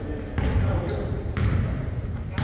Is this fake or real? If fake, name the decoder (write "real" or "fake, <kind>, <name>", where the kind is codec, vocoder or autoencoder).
fake, vocoder, BigVGAN v2